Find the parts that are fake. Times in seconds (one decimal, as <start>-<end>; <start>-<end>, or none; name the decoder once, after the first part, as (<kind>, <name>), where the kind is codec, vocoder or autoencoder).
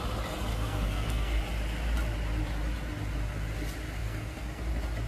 0.5-1.4 (codec, SNAC); 4.0-4.6